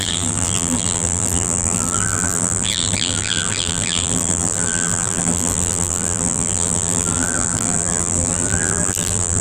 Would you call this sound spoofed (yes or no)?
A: yes